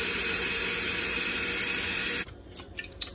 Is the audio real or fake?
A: real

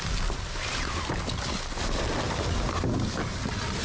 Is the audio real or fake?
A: real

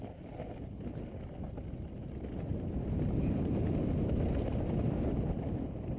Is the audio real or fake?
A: real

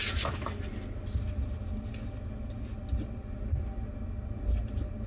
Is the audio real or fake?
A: real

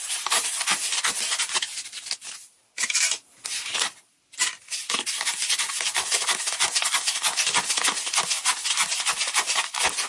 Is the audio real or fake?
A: real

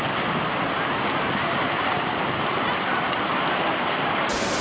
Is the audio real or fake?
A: real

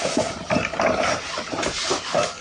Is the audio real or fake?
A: real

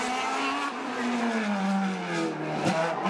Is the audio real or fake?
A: real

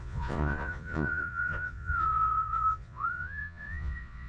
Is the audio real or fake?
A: fake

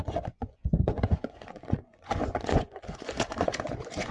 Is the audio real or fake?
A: fake